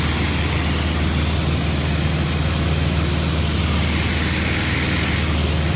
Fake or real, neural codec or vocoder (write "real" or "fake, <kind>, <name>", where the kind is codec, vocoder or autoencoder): real